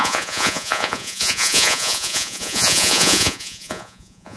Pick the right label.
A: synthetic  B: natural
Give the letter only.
A